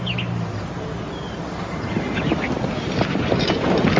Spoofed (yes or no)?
no